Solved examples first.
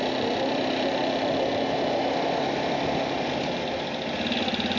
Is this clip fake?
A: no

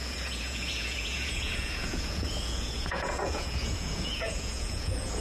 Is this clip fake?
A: yes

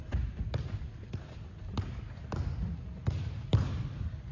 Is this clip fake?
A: no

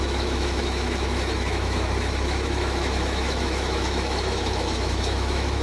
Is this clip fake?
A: yes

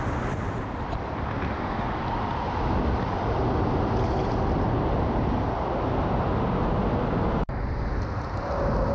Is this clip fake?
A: no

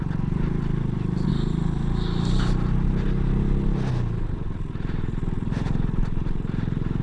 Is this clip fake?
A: no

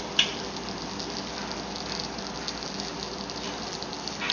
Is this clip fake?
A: no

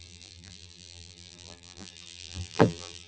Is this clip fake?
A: yes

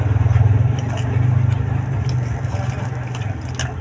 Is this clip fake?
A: no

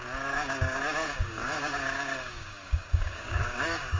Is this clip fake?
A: yes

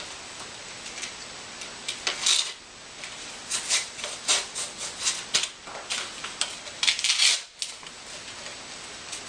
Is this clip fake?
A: no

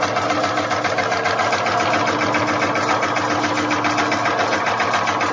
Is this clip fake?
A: no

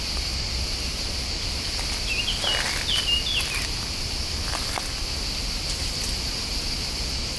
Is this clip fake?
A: no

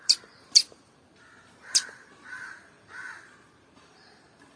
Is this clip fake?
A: yes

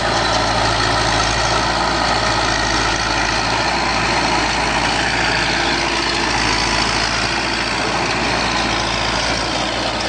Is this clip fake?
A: no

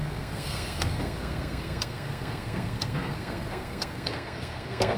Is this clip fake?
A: yes